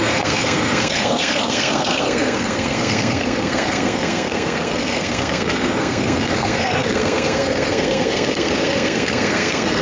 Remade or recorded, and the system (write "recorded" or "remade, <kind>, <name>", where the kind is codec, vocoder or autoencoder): remade, codec, SNAC